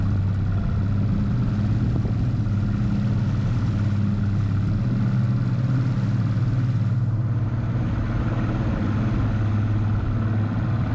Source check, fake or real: real